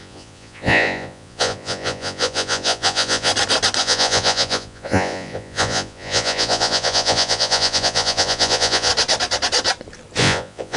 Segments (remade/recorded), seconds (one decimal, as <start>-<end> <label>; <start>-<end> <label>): 0.0-3.3 remade; 3.3-3.8 recorded; 3.8-8.9 remade; 8.9-10.2 recorded; 10.2-10.8 remade